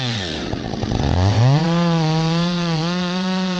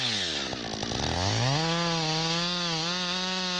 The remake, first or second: first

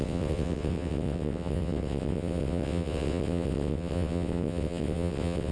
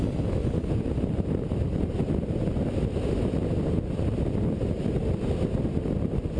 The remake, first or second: first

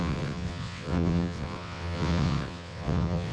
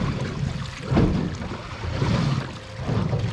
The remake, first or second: first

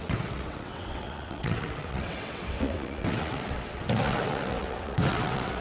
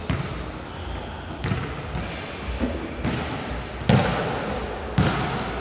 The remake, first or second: first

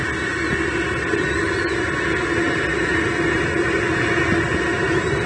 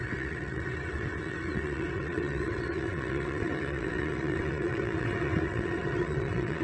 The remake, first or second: second